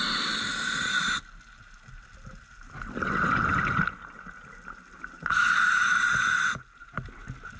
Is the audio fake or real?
real